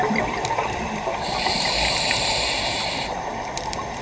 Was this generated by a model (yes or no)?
yes